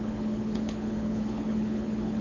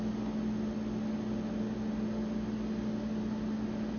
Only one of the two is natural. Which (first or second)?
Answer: second